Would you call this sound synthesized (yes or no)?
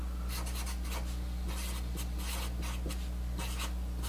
no